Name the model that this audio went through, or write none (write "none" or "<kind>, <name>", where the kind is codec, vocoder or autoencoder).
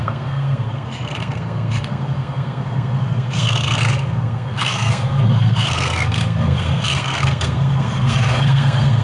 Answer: codec, SNAC